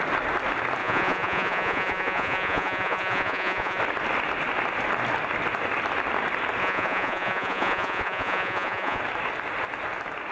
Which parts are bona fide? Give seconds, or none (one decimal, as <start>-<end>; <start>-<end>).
0.0-0.8; 3.8-6.6; 9.0-10.3